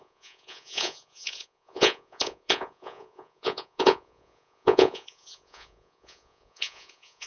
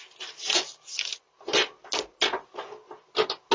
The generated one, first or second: first